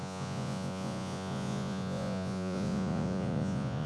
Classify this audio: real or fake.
fake